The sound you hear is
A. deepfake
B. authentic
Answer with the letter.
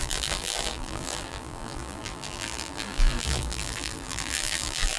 A